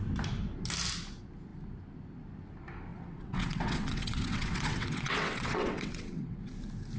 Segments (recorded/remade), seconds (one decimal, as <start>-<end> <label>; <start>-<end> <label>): 0.0-2.9 recorded; 2.9-6.5 remade; 6.5-7.0 recorded